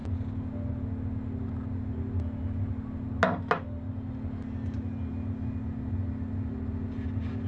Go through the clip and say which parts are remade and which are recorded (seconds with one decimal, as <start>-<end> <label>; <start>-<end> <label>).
0.0-7.5 recorded